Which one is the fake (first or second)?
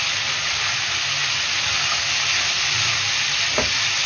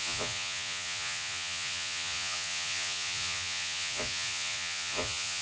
second